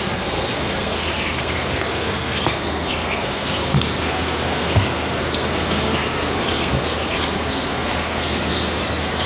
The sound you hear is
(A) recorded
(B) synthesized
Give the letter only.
B